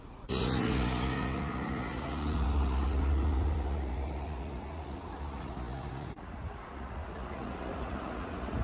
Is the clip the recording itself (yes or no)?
no